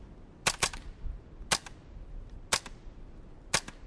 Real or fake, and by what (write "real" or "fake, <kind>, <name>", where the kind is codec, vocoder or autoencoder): real